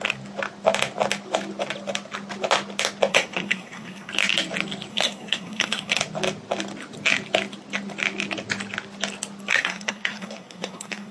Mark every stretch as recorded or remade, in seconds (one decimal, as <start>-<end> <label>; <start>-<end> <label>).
0.0-3.1 recorded; 3.1-4.1 remade; 4.1-4.9 recorded; 4.9-6.0 remade; 6.0-9.5 recorded; 9.5-11.1 remade